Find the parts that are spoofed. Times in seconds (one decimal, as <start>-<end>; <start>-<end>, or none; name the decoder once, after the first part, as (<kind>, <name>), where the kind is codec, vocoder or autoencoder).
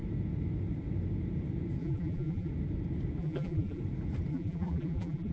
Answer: 1.8-2.5 (vocoder, BigVGAN v2); 3.2-3.8; 4.3-5.3